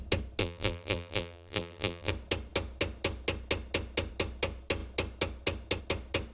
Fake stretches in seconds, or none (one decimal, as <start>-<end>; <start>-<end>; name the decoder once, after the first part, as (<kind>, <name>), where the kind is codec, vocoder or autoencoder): 0.4-2.1 (vocoder, BigVGAN v2)